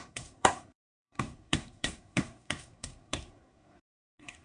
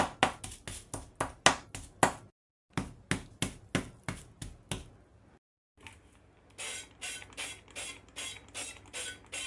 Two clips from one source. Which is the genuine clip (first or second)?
second